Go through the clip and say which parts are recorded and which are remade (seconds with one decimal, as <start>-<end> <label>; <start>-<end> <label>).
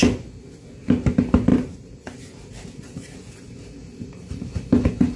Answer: 0.0-1.5 recorded; 1.5-4.4 remade; 4.4-5.2 recorded